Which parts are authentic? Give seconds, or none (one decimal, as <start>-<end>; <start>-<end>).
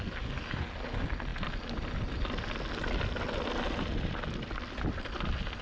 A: 0.0-5.6